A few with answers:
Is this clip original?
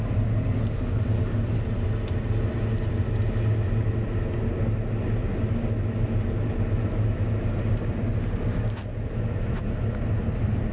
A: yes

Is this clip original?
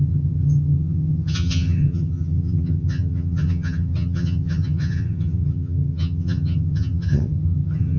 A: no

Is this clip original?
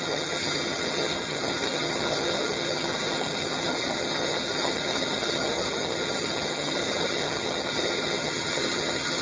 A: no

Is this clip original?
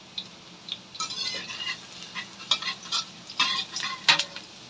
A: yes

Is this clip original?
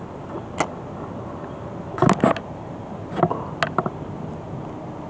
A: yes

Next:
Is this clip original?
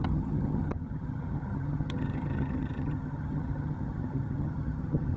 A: no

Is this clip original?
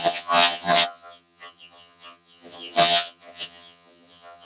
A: no